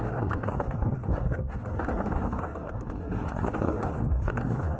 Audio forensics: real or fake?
fake